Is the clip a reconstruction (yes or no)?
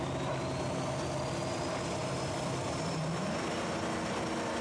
no